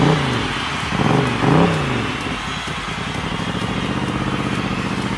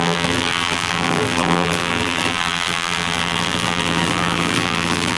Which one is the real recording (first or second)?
first